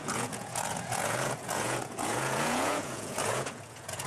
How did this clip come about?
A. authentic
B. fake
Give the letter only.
B